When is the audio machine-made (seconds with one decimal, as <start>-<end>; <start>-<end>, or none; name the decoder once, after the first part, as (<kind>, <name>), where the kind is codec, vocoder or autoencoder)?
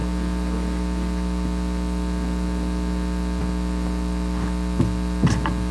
none